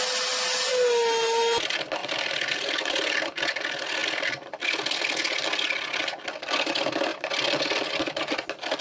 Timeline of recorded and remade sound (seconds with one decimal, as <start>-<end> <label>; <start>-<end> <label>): 0.0-2.0 recorded; 2.0-2.7 remade; 2.7-8.8 recorded